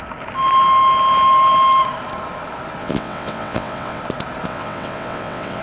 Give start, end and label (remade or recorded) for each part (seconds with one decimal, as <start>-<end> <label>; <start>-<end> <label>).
0.0-2.8 recorded; 2.8-4.0 remade; 4.0-4.5 recorded; 4.5-5.6 remade